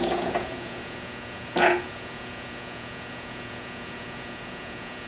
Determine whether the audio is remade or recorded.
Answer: remade